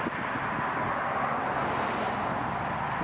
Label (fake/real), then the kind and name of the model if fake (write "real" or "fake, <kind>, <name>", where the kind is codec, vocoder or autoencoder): real